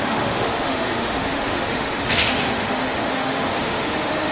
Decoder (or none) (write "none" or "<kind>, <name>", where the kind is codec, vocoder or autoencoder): autoencoder, DAC-VAE